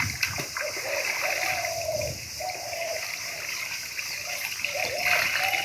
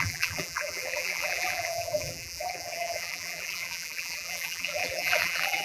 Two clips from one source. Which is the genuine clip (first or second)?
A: first